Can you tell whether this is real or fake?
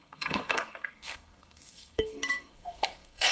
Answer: fake